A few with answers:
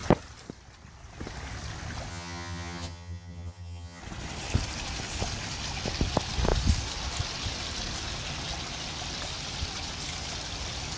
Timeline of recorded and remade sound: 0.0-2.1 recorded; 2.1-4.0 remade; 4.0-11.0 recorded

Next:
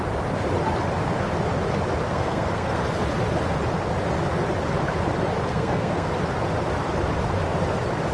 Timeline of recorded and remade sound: 0.0-2.1 recorded; 2.1-2.8 remade; 2.8-5.5 recorded; 5.5-6.1 remade; 6.1-8.1 recorded

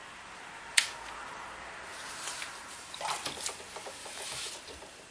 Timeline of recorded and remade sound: 0.0-4.0 recorded; 4.0-4.5 remade; 4.5-5.1 recorded

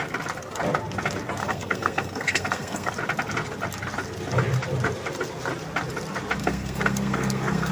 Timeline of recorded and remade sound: 0.0-1.4 recorded; 1.4-2.9 remade; 2.9-6.4 recorded; 6.4-7.7 remade

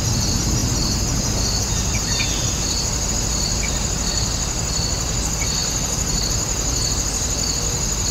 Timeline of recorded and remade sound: 0.0-8.1 recorded

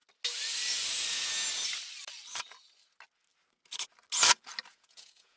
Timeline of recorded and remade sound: 0.0-1.1 recorded; 1.1-1.5 remade; 1.5-4.7 recorded; 4.7-5.4 remade

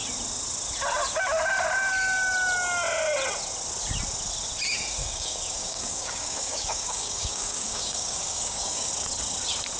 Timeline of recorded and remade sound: 0.0-5.0 recorded; 5.0-8.9 remade; 8.9-9.8 recorded

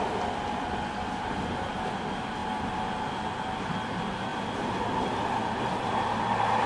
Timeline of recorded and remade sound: 0.0-6.7 recorded